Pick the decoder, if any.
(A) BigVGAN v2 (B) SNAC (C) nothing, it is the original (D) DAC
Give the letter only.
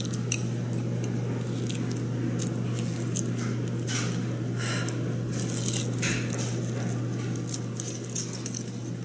C